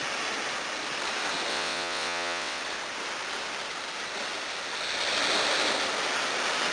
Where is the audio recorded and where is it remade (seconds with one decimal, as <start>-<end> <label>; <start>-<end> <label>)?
0.0-1.5 recorded; 1.5-2.6 remade; 2.6-6.7 recorded